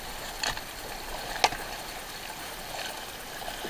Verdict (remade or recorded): recorded